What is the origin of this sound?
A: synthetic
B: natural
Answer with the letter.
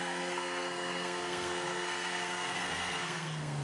A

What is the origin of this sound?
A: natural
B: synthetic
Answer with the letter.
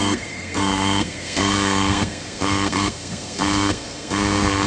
B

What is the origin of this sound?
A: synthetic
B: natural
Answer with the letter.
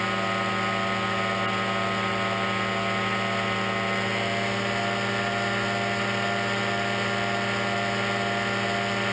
B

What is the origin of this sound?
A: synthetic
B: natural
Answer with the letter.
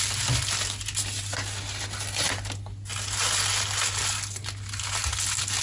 B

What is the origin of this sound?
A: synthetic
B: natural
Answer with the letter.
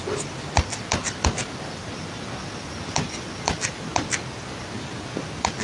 B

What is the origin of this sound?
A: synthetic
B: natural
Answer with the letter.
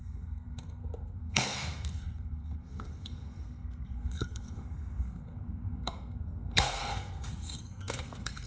A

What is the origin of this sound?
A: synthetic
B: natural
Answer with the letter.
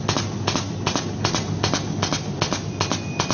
B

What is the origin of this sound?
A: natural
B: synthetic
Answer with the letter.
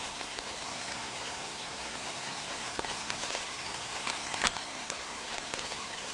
B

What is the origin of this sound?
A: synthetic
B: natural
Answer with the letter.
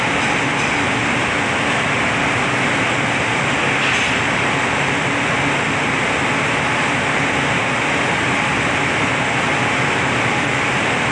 B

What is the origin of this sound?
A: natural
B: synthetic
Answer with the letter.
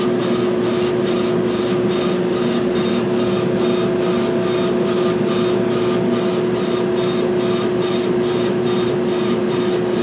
A